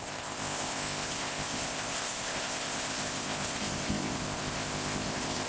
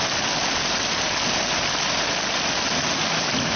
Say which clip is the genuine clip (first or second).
second